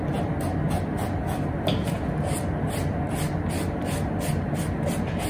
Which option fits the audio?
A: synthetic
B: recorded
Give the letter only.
B